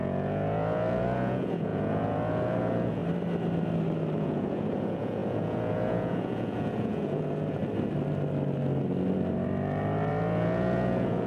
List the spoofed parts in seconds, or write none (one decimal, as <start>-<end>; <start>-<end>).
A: 0.0-3.0; 4.2-7.6; 10.1-11.3